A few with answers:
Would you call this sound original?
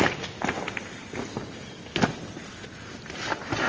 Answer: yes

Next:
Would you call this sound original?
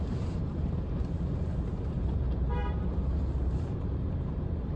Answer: no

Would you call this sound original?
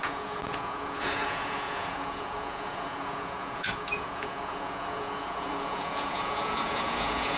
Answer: no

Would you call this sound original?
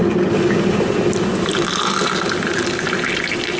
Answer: yes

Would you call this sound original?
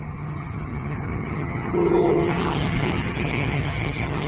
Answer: no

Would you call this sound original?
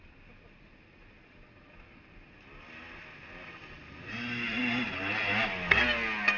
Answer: yes